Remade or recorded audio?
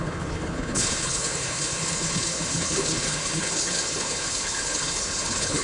remade